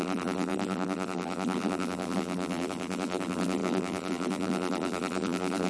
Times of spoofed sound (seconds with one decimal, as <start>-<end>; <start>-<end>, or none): 0.0-5.7